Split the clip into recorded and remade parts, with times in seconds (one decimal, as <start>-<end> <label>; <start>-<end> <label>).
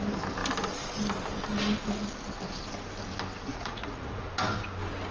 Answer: 0.0-3.5 recorded; 3.5-4.3 remade; 4.3-5.1 recorded